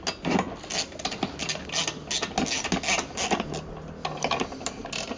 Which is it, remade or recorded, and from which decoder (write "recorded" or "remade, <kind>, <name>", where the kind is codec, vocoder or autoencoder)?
recorded